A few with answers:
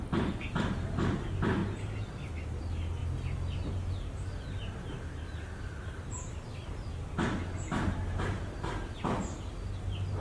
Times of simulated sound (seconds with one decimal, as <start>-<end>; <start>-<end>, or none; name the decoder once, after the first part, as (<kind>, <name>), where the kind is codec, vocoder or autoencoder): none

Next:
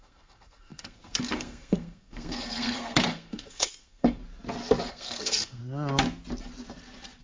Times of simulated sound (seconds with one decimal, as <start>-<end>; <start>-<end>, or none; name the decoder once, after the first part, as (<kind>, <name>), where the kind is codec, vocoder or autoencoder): 0.0-4.2 (codec, SNAC); 4.9-5.6

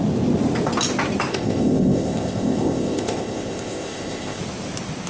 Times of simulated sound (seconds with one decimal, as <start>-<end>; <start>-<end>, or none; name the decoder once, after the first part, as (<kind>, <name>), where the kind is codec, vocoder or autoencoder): 1.3-4.4 (codec, ZipCodec)

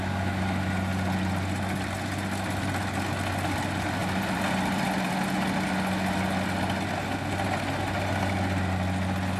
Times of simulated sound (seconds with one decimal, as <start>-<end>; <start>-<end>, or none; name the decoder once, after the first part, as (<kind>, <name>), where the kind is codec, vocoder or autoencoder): 4.0-5.1 (vocoder, BigVGAN v2)

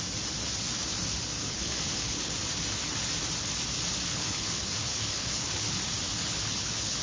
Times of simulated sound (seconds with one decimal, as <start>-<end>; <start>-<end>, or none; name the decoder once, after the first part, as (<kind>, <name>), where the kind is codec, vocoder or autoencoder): 1.4-2.3 (codec, HILCodec); 4.1-5.8; 6.2-7.0

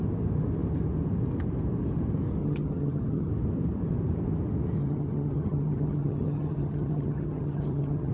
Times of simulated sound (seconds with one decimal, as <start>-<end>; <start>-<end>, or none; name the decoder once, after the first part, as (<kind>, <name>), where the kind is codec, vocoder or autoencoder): 2.4-3.3 (vocoder, HiFi-GAN); 4.8-8.1

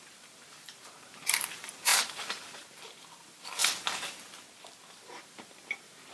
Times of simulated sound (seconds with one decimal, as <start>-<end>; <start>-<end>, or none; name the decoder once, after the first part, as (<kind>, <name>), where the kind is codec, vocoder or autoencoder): 0.0-3.6 (vocoder, BigVGAN v2); 4.9-6.1

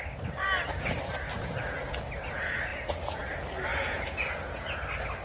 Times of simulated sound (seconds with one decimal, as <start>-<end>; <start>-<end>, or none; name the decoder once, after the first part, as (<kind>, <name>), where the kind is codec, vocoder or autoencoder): 2.7-3.2 (vocoder, Vocos); 3.7-4.8